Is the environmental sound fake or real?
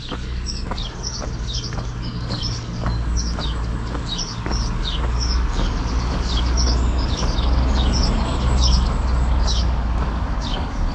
fake